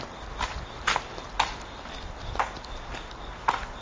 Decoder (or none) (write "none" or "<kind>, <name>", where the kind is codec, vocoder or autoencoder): none